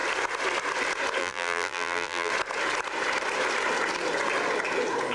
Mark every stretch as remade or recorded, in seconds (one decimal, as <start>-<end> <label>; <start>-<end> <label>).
0.0-1.2 recorded; 1.2-2.3 remade; 2.3-5.1 recorded